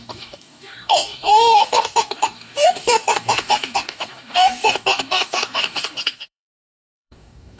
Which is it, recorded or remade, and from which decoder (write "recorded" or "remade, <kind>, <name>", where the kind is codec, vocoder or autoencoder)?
remade, codec, DAC